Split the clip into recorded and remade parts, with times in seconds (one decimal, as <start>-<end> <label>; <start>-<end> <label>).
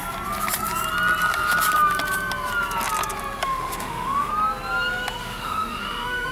0.0-3.4 recorded; 3.4-4.3 remade; 4.3-5.2 recorded; 5.2-6.3 remade